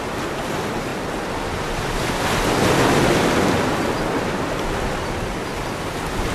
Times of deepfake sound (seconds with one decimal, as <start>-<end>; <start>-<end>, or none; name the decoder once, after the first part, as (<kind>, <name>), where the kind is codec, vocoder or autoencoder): none